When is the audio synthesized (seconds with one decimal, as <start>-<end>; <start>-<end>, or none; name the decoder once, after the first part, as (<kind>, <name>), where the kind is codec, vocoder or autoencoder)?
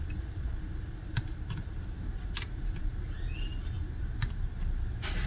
none